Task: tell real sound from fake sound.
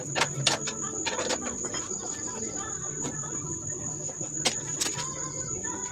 real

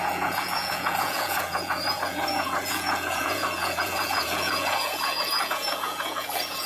fake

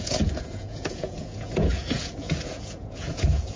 fake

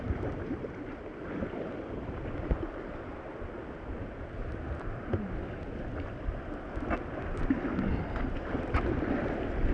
real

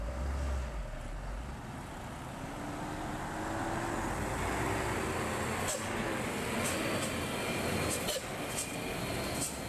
real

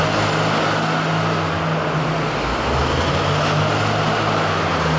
real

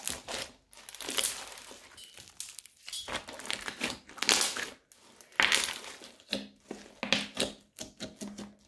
real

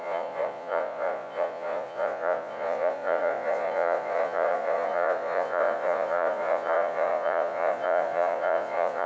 fake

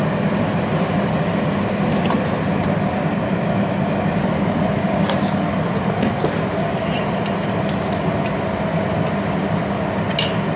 real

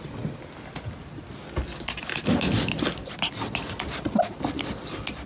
real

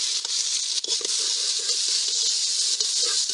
real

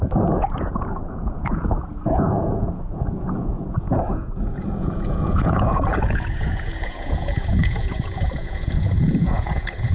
fake